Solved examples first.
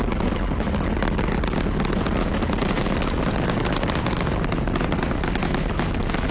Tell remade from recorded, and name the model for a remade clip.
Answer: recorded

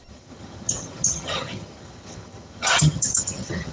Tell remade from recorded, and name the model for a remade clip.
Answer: remade, vocoder, HiFi-GAN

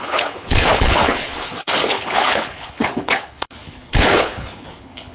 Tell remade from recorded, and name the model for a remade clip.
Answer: remade, codec, HILCodec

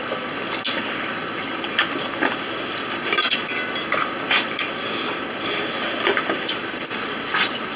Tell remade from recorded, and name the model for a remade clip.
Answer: recorded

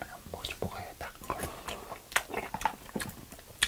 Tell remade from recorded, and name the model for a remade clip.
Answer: recorded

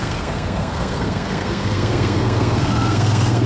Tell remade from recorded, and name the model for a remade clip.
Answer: remade, codec, SNAC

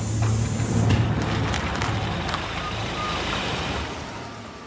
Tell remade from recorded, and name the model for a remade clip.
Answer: remade, vocoder, BigVGAN v2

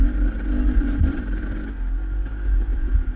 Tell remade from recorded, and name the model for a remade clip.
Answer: recorded